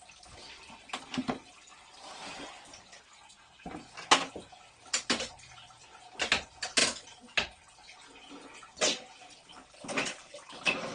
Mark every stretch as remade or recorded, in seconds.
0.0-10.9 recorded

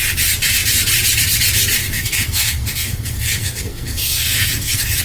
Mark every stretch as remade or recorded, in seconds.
0.0-1.8 recorded; 1.8-5.0 remade

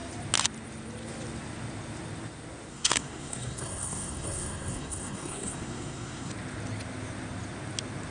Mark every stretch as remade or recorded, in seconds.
0.0-2.7 recorded; 2.7-6.3 remade; 6.3-8.1 recorded

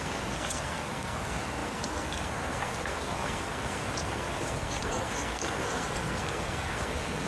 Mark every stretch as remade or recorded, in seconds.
0.0-7.3 remade

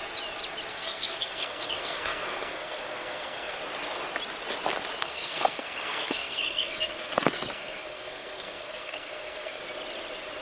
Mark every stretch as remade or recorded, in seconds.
0.0-0.7 recorded; 0.7-3.6 remade; 3.6-5.0 recorded; 5.0-9.6 remade; 9.6-10.4 recorded

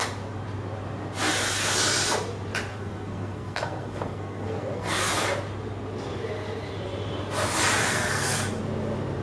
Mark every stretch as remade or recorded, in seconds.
0.0-2.7 recorded; 2.7-5.1 remade; 5.1-7.8 recorded; 7.8-8.6 remade; 8.6-9.2 recorded

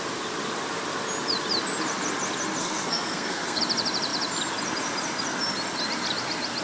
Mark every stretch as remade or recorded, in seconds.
0.0-2.6 recorded; 2.6-3.6 remade; 3.6-6.6 recorded